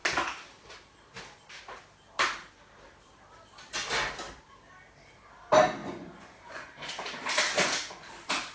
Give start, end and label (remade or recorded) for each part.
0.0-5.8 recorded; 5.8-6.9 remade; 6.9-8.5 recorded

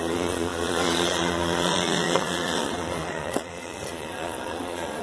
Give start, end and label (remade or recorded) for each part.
0.0-5.0 remade

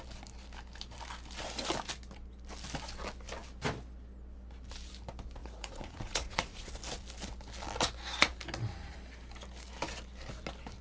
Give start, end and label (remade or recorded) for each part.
0.0-5.4 recorded; 5.4-6.7 remade; 6.7-10.8 recorded

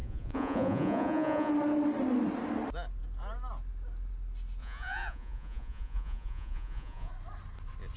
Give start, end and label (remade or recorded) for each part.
0.0-1.5 remade; 1.5-4.6 recorded; 4.6-7.1 remade; 7.1-8.0 recorded

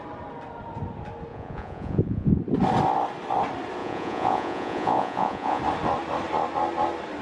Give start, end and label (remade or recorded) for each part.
0.0-1.3 recorded; 1.3-2.4 remade; 2.4-3.8 recorded; 3.8-5.6 remade; 5.6-7.2 recorded

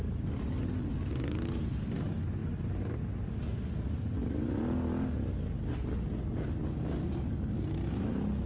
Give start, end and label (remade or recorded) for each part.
0.0-8.5 recorded

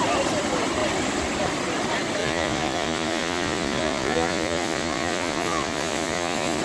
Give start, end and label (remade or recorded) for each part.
0.0-2.2 recorded; 2.2-6.6 remade

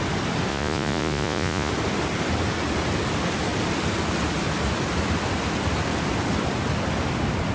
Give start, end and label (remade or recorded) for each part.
0.0-0.5 recorded; 0.5-1.7 remade; 1.7-7.5 recorded